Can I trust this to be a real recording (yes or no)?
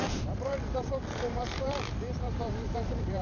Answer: no